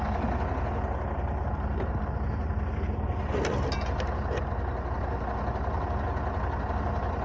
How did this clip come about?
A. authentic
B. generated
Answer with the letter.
A